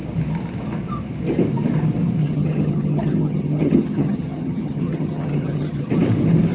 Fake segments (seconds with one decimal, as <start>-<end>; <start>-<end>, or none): 2.2-5.9